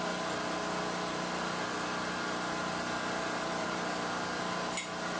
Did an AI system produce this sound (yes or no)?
no